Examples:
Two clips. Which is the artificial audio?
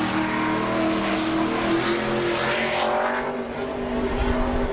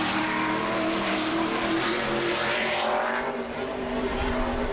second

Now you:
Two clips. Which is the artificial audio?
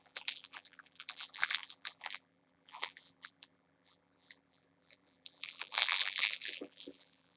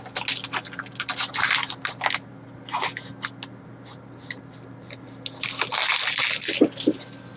first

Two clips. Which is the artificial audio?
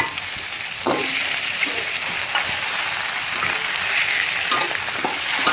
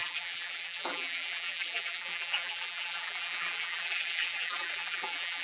second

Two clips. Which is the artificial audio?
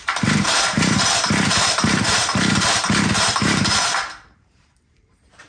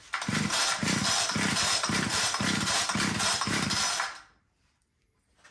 first